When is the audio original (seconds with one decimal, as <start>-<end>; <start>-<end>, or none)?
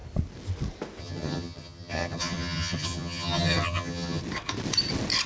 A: 0.0-1.0; 4.2-5.3